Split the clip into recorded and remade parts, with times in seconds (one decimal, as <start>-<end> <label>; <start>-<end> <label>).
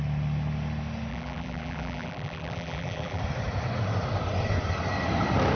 0.0-1.1 recorded; 1.1-3.2 remade; 3.2-5.6 recorded